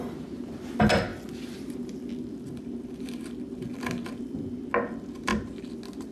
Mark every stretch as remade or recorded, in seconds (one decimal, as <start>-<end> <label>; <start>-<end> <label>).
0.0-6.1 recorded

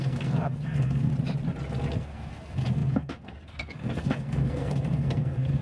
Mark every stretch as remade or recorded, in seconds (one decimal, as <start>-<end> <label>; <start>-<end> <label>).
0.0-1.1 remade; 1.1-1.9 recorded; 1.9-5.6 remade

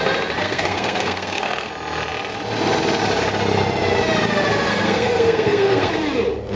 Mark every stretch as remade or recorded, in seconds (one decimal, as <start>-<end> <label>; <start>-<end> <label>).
0.0-0.4 recorded; 0.4-1.7 remade; 1.7-4.7 recorded; 4.7-5.9 remade; 5.9-6.6 recorded